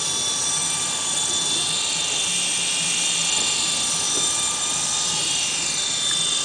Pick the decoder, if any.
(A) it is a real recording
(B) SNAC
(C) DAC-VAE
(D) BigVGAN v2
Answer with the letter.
A